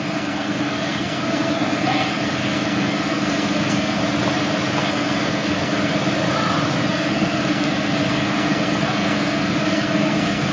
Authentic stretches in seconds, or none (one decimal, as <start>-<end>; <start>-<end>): 4.0-4.8; 5.9-6.9